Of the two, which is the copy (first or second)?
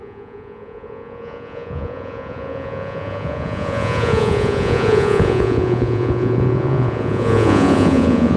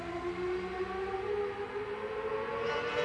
first